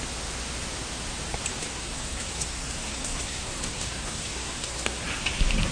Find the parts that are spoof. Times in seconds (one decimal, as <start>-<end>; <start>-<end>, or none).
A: 1.6-5.0